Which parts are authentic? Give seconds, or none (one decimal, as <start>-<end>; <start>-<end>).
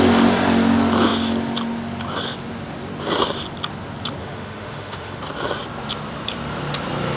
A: 0.0-4.2; 5.2-7.2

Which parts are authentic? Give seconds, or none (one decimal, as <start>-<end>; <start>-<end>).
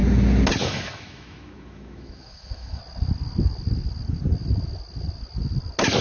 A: 0.0-0.6; 2.8-6.0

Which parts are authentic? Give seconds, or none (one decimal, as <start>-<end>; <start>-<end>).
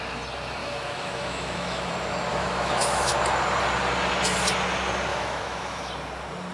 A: 0.0-0.6; 1.9-2.3; 3.1-5.1; 5.9-6.5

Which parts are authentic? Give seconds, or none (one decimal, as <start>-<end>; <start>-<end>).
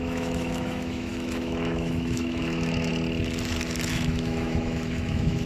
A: 2.9-3.9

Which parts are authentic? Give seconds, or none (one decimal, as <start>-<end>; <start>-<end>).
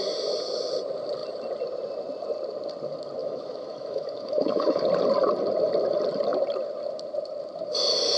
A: 0.0-3.2; 4.8-8.2